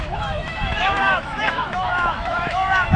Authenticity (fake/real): fake